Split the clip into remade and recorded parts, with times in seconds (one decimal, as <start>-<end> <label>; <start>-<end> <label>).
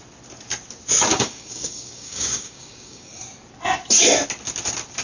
0.0-1.1 recorded; 1.1-3.1 remade; 3.1-5.0 recorded